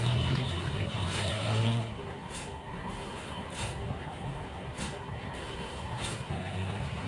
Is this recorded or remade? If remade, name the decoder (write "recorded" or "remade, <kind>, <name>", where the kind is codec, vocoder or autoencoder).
remade, codec, SNAC